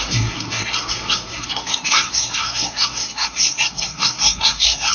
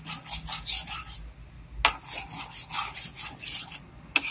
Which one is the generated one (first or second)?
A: first